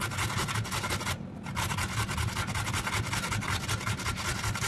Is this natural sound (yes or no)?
yes